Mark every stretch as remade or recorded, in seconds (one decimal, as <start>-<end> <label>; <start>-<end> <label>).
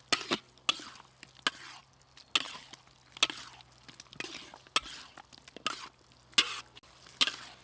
0.0-7.6 recorded